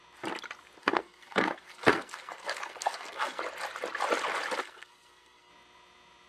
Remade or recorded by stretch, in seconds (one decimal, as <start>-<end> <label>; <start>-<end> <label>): 0.0-0.8 recorded; 0.8-3.4 remade; 3.4-4.6 recorded; 4.6-5.5 remade; 5.5-6.3 recorded